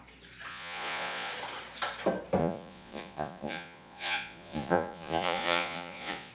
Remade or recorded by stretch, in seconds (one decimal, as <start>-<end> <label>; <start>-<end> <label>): 0.0-0.5 recorded; 0.5-1.3 remade; 1.3-2.4 recorded; 2.4-6.3 remade